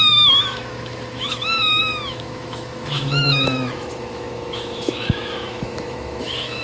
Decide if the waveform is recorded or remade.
remade